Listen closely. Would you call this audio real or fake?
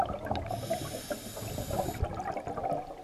real